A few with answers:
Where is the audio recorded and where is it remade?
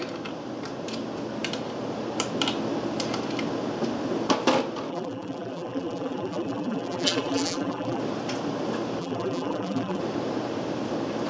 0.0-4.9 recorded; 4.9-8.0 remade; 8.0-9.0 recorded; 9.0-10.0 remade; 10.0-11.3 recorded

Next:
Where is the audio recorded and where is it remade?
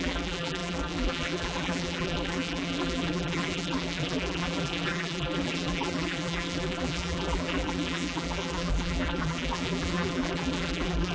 0.0-11.1 remade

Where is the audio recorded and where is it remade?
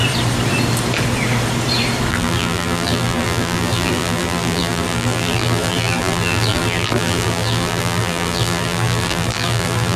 0.0-2.1 recorded; 2.1-10.0 remade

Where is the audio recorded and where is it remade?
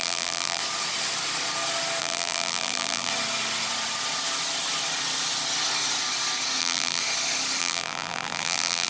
0.0-0.6 remade; 0.6-2.0 recorded; 2.0-3.1 remade; 3.1-6.6 recorded; 6.6-7.0 remade; 7.0-7.6 recorded; 7.6-8.9 remade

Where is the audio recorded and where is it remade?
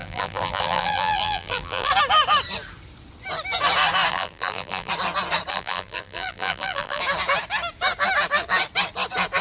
0.0-1.9 remade; 1.9-4.1 recorded; 4.1-4.9 remade; 4.9-5.5 recorded; 5.5-7.0 remade; 7.0-9.4 recorded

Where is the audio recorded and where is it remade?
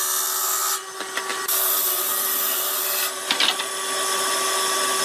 0.0-1.3 recorded; 1.3-3.5 remade; 3.5-5.0 recorded